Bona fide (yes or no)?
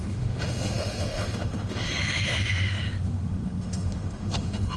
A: no